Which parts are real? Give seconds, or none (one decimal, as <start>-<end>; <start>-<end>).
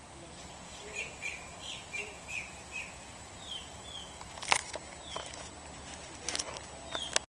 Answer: 0.0-1.3; 5.0-7.4